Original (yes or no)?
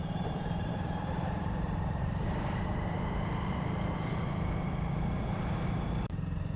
no